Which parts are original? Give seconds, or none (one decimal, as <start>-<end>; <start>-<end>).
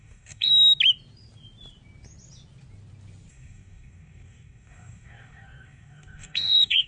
0.5-3.3